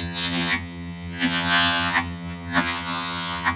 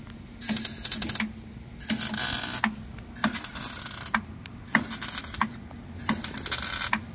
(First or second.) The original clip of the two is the second